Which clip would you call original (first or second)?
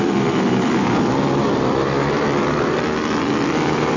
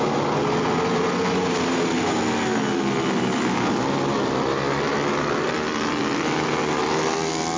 second